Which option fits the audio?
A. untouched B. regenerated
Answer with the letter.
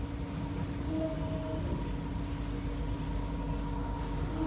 A